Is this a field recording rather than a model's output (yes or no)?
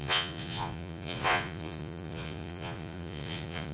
no